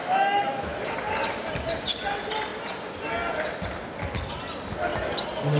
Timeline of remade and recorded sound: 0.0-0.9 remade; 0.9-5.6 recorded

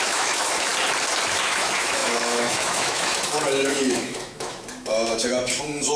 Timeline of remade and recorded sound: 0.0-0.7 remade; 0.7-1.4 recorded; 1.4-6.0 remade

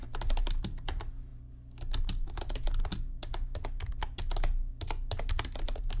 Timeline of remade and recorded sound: 0.0-6.0 recorded

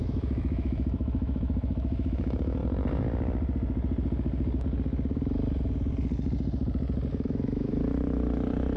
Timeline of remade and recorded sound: 0.0-2.6 remade; 2.6-7.1 recorded; 7.1-7.7 remade; 7.7-8.8 recorded

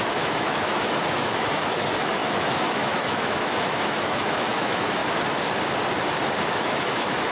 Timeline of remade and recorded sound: 0.0-5.0 remade; 5.0-6.5 recorded; 6.5-7.3 remade